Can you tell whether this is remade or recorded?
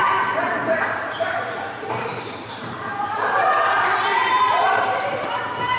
remade